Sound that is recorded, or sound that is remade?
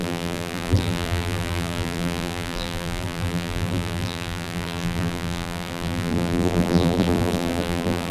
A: remade